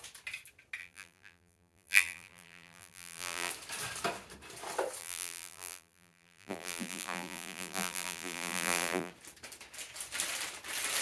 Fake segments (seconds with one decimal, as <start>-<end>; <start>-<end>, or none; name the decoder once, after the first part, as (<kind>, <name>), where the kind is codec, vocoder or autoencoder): 0.8-3.5 (vocoder, BigVGAN v2); 5.0-9.1